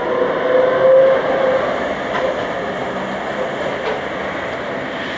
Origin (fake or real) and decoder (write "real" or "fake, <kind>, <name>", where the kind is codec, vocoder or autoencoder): real